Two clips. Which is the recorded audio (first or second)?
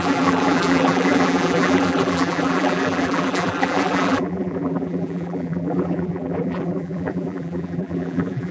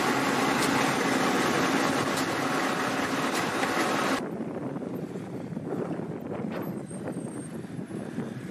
second